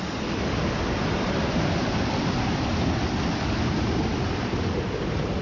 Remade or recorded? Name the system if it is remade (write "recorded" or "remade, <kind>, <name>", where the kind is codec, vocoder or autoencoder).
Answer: recorded